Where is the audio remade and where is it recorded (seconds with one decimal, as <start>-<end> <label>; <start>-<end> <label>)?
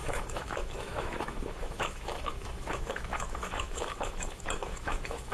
0.0-5.3 remade